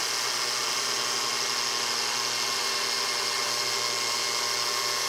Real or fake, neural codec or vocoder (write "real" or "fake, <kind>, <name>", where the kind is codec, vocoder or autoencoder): real